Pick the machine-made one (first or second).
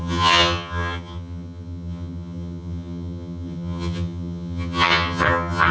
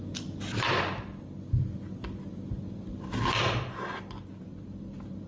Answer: first